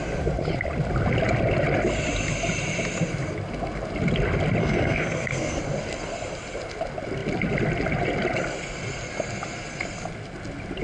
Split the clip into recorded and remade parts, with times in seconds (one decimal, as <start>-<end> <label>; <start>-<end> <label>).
0.0-4.6 recorded; 4.6-5.6 remade; 5.6-10.8 recorded